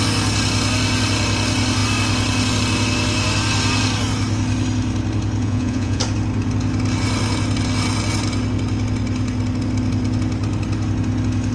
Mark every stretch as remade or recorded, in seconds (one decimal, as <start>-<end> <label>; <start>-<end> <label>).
0.0-5.4 recorded; 5.4-6.0 remade; 6.0-11.5 recorded